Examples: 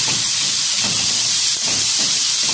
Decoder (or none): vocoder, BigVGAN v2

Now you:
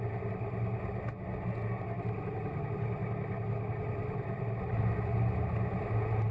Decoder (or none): none